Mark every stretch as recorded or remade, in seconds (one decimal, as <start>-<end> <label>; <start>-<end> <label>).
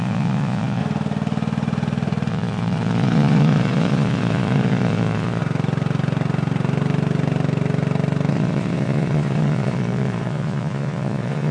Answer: 0.0-0.8 remade; 0.8-2.3 recorded; 2.3-5.4 remade; 5.4-8.3 recorded; 8.3-11.5 remade